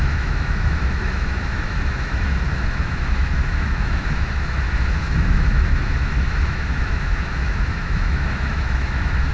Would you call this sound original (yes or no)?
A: no